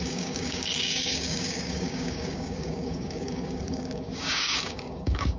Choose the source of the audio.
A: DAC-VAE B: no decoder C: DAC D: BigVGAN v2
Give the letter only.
C